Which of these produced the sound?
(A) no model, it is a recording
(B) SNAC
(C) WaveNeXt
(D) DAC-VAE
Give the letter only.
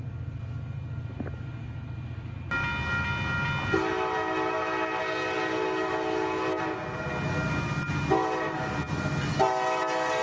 A